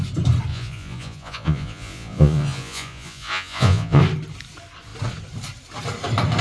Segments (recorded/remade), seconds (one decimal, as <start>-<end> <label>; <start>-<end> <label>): 0.0-0.5 recorded; 0.5-4.0 remade; 4.0-6.4 recorded